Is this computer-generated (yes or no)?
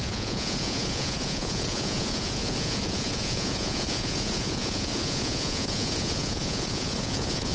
yes